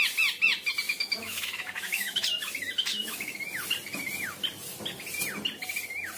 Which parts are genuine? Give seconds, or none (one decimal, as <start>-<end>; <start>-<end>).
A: 0.0-0.9; 2.2-2.9; 3.4-6.2